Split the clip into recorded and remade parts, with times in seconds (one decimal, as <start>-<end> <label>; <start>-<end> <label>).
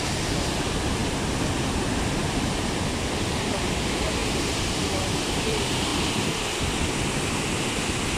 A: 0.0-8.2 remade